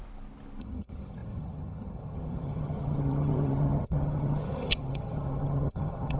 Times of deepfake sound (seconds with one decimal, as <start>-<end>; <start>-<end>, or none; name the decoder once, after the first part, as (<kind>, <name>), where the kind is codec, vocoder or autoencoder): 0.6-6.2 (vocoder, HiFi-GAN)